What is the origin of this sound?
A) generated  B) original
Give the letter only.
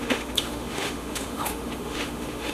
A